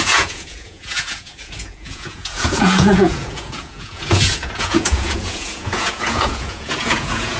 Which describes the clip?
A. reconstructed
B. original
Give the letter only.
A